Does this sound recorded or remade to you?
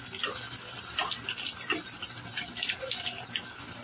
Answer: recorded